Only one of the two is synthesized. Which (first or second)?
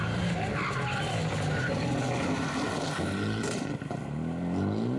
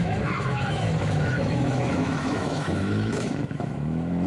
second